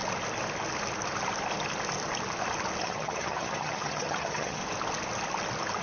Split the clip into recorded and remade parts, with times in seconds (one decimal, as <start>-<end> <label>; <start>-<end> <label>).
0.0-2.8 recorded; 2.8-4.6 remade; 4.6-5.8 recorded